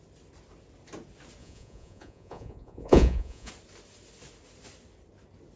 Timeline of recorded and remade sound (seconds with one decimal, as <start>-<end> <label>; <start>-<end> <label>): 0.0-1.4 recorded; 1.4-3.5 remade; 3.5-5.6 recorded